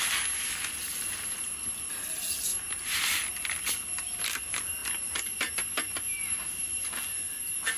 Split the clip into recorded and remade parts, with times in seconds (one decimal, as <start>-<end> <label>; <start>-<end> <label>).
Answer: 0.0-7.8 recorded